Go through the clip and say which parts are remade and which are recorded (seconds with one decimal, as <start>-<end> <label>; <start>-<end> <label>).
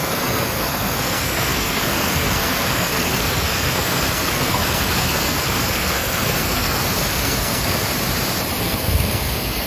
0.0-7.9 remade; 7.9-8.6 recorded; 8.6-9.7 remade